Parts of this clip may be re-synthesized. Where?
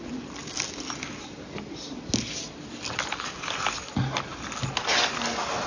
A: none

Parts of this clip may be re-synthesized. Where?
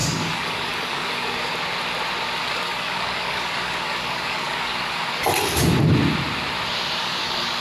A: 0.0-1.5 (codec, DAC); 2.4-5.2; 7.0-7.6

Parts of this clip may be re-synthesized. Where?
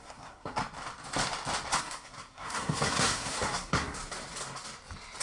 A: 0.0-0.6 (codec, SNAC); 1.8-4.0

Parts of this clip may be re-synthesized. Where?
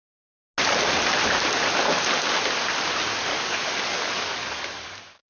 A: 3.3-5.3 (codec, DAC)